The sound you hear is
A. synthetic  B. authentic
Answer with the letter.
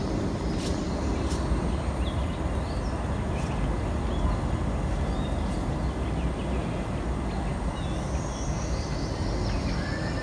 B